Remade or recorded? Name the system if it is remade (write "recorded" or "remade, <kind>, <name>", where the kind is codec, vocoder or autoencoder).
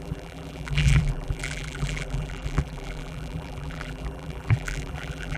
remade, vocoder, BigVGAN v2